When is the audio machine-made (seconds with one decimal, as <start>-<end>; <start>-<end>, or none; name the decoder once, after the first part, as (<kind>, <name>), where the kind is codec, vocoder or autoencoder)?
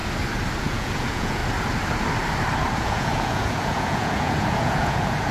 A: 0.6-1.4 (vocoder, Vocos); 2.7-5.3